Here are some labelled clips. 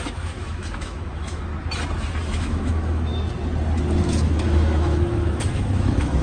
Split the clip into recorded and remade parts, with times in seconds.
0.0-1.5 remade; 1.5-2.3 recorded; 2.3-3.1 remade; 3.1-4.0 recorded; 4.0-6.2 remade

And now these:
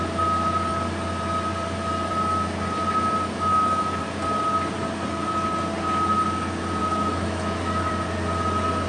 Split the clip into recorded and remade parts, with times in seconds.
0.0-3.5 recorded; 3.5-4.0 remade; 4.0-6.8 recorded; 6.8-7.9 remade; 7.9-8.9 recorded